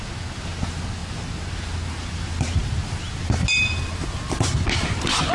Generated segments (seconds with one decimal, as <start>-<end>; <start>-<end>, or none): none